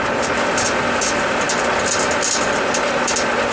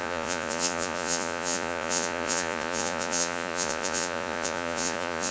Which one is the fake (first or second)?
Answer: second